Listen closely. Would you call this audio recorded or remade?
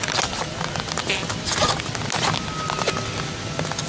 recorded